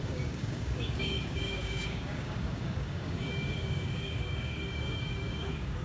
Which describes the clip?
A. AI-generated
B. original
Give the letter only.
A